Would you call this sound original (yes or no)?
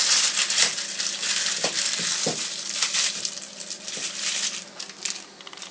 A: yes